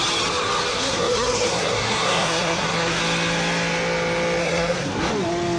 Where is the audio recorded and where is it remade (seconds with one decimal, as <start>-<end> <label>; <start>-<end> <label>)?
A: 0.0-0.7 recorded; 0.7-3.0 remade; 3.0-4.4 recorded; 4.4-5.1 remade; 5.1-5.6 recorded